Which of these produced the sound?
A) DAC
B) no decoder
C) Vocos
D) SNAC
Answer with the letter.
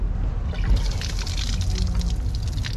B